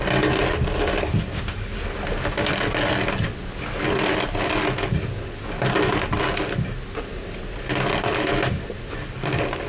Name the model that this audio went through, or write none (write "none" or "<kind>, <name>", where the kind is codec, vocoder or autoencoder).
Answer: none